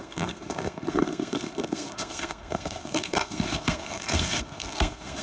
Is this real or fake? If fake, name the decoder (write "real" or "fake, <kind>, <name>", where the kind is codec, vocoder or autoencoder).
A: fake, codec, SNAC